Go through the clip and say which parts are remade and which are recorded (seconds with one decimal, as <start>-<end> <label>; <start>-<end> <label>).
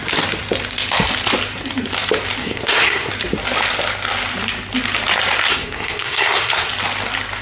0.0-2.4 recorded; 2.4-3.1 remade; 3.1-5.5 recorded; 5.5-6.7 remade; 6.7-7.4 recorded